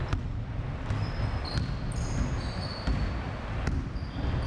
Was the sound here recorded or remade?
recorded